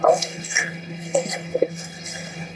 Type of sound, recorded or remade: remade